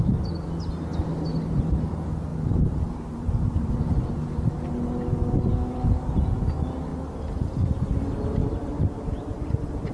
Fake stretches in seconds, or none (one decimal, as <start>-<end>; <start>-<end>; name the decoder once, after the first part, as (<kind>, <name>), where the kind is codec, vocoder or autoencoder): 2.3-3.7 (vocoder, BigVGAN v2); 8.4-9.9